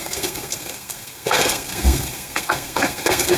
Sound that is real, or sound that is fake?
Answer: fake